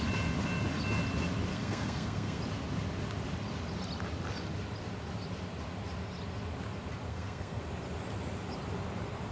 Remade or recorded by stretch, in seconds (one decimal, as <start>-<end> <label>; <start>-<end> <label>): 0.0-1.5 recorded; 1.5-2.4 remade; 2.4-7.1 recorded; 7.1-7.6 remade; 7.6-9.3 recorded